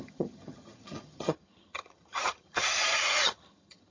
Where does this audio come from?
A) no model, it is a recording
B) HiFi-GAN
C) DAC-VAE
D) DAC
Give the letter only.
B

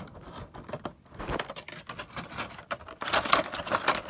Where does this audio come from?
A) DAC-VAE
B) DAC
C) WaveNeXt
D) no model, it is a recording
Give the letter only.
D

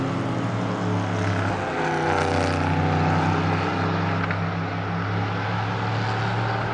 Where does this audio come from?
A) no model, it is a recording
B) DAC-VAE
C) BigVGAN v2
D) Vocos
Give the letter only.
A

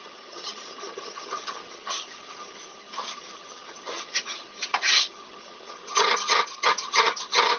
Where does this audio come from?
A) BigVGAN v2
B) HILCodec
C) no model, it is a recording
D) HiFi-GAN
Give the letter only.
D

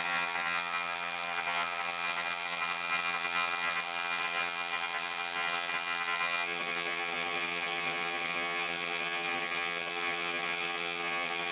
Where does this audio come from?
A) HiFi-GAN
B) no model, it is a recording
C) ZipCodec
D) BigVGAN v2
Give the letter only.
A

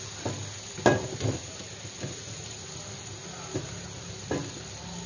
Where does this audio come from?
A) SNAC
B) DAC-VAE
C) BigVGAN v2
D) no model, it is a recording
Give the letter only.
D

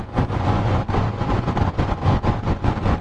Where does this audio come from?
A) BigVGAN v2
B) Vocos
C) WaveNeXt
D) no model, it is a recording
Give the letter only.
B